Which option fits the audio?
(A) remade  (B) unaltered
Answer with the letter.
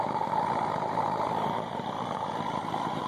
A